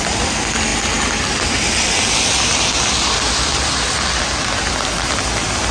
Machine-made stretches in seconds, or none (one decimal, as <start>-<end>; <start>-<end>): none